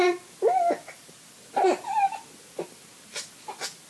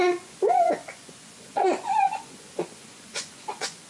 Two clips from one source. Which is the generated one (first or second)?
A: second